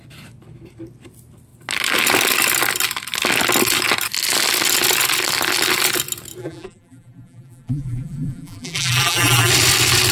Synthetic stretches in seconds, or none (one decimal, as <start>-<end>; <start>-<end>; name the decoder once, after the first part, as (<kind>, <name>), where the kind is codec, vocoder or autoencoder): 6.4-9.5 (vocoder, BigVGAN v2)